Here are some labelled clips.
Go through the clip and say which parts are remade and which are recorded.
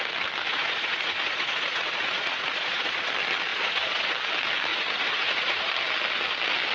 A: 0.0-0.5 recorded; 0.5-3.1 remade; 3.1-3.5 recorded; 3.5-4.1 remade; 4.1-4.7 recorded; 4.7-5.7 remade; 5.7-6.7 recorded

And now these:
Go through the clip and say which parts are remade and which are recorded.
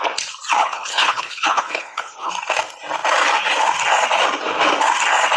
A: 0.0-0.6 recorded; 0.6-2.3 remade; 2.3-5.4 recorded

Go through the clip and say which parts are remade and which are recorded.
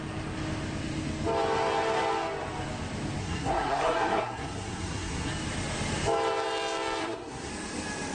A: 0.0-3.2 recorded; 3.2-5.3 remade; 5.3-7.0 recorded; 7.0-7.5 remade; 7.5-8.1 recorded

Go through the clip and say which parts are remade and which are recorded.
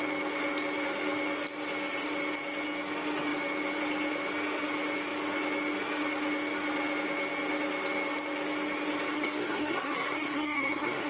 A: 0.0-9.1 recorded; 9.1-11.1 remade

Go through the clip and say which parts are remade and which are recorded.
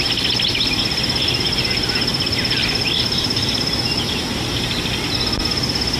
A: 0.0-6.0 recorded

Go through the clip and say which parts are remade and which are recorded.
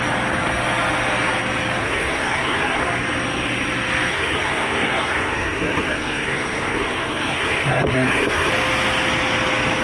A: 0.0-1.8 recorded; 1.8-2.8 remade; 2.8-4.1 recorded; 4.1-8.5 remade; 8.5-9.8 recorded